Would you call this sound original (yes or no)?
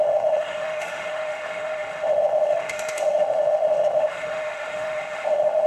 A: no